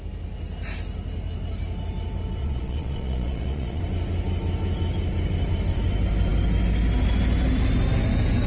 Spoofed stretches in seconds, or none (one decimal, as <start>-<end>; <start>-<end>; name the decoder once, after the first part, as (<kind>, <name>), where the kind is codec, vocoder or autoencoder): 2.4-3.8 (vocoder, Vocos)